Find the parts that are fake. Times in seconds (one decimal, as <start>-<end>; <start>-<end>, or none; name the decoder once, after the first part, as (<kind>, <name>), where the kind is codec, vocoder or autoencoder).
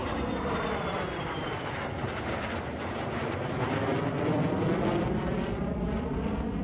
none